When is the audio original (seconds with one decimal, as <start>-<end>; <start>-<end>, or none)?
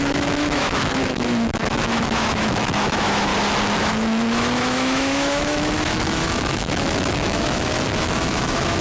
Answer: 3.3-3.8